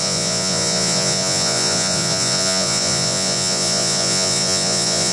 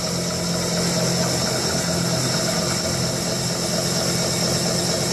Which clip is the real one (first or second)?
second